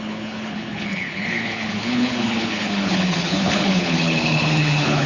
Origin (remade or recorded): remade